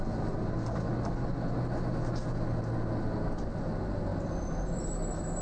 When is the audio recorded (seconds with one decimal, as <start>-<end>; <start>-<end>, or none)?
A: 0.0-5.4